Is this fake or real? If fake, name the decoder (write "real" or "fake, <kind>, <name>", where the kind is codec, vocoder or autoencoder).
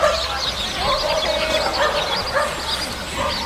real